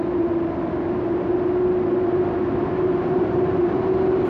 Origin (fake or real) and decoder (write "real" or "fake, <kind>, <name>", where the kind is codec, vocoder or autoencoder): real